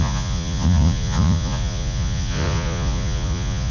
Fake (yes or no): yes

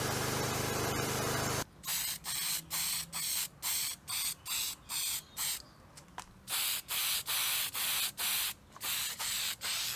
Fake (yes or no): no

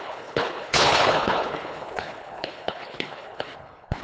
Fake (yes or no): yes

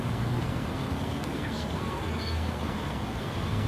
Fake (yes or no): yes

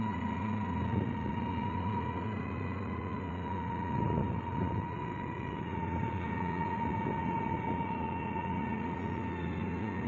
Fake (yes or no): yes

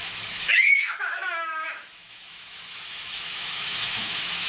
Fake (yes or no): yes